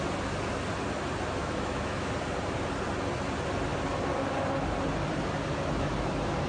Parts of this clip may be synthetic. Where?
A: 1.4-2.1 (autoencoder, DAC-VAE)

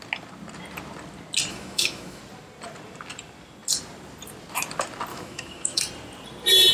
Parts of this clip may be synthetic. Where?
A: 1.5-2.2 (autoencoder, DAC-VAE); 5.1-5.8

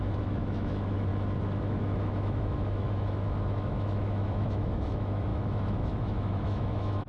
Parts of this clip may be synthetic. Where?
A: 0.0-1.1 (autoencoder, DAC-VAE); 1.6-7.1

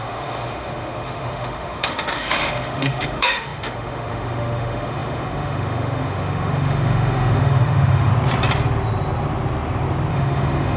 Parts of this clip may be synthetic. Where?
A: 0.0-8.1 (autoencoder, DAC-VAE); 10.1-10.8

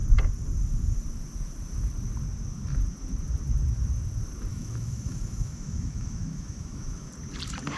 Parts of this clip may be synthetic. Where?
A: 4.5-7.1 (autoencoder, DAC-VAE)

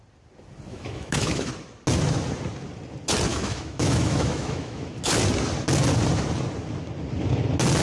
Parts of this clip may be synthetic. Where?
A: 0.7-1.5 (autoencoder, DAC-VAE); 3.3-5.1